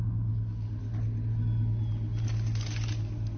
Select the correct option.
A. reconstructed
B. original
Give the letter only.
B